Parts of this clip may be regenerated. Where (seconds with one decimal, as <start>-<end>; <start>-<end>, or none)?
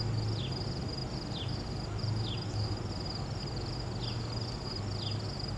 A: none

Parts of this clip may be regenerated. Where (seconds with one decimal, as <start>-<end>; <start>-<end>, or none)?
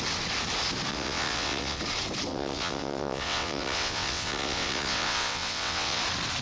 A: 0.9-1.8; 2.3-6.0